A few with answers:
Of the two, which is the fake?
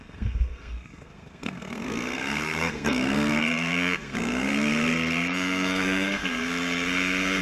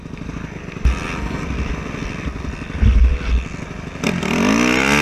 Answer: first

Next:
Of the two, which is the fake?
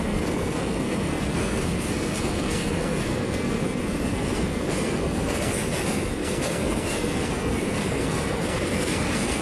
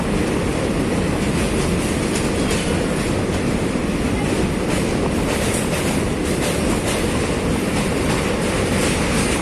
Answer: first